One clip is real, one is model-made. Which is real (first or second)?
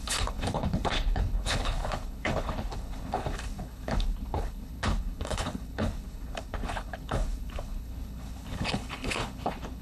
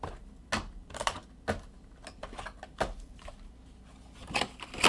second